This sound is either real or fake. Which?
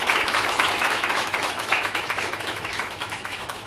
fake